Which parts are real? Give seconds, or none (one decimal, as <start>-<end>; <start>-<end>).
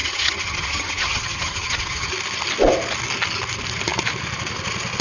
2.1-5.0